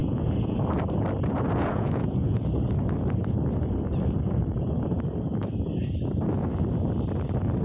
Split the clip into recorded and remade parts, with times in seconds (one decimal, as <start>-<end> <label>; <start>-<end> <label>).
0.0-0.6 remade; 0.6-1.7 recorded; 1.7-2.4 remade; 2.4-7.6 recorded